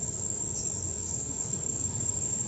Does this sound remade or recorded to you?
remade